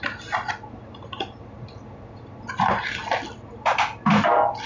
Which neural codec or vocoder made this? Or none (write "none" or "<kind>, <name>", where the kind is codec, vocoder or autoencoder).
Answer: none